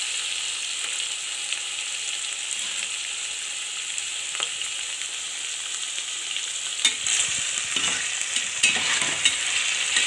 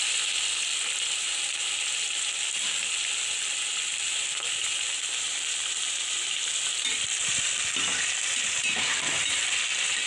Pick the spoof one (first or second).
second